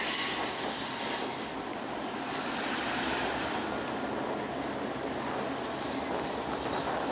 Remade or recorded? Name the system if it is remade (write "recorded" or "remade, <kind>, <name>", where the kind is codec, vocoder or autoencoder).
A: recorded